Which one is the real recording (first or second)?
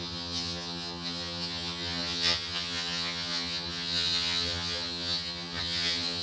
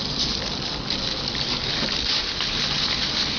second